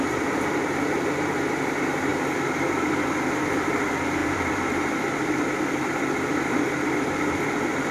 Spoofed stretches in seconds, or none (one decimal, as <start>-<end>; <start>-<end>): 0.0-2.1; 3.1-7.9